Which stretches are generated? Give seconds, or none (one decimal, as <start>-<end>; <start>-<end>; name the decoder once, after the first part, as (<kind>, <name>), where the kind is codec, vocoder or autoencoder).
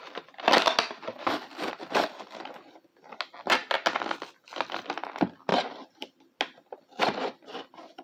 5.5-6.2 (vocoder, BigVGAN v2)